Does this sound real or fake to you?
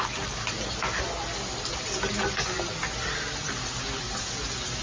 real